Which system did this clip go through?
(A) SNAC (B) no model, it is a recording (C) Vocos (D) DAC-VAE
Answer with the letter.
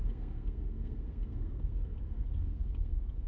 A